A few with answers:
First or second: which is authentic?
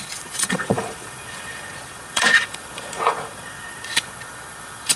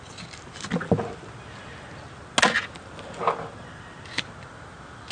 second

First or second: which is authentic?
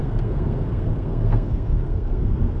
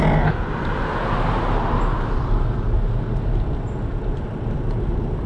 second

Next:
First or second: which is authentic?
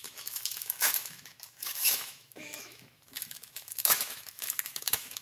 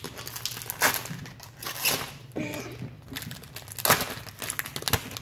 second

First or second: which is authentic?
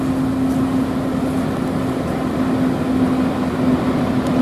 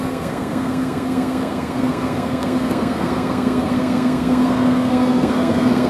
first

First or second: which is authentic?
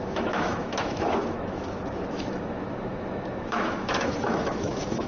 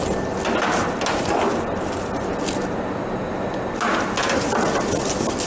second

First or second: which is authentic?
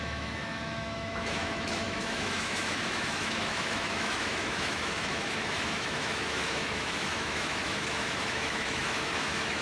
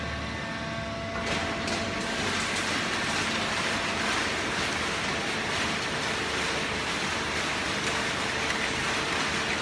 second